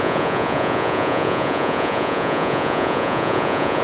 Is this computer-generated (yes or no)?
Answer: yes